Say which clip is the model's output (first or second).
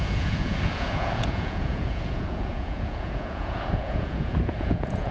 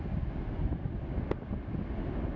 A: first